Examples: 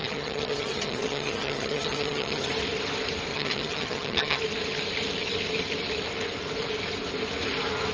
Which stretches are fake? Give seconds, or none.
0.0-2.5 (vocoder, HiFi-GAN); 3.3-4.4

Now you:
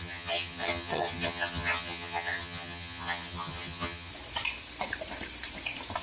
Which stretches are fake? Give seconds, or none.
0.0-4.1 (vocoder, HiFi-GAN)

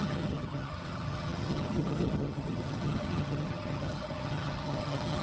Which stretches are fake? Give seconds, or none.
0.0-5.2 (vocoder, HiFi-GAN)

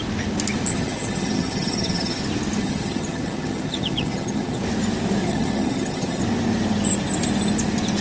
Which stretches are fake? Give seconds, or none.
0.7-2.2 (vocoder, HiFi-GAN); 2.6-4.6; 5.2-6.2

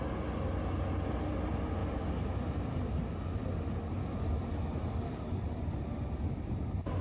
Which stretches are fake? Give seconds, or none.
none

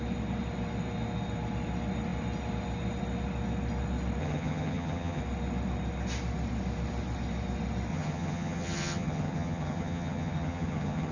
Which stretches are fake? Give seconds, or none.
4.2-5.2 (vocoder, HiFi-GAN); 7.9-11.1